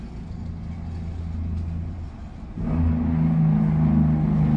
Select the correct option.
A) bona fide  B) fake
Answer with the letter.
A